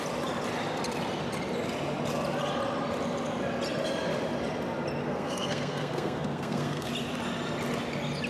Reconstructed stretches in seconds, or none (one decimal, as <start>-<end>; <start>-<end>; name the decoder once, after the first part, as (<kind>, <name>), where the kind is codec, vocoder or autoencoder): 5.0-6.9 (codec, SNAC)